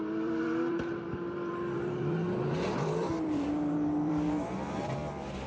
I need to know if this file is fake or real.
fake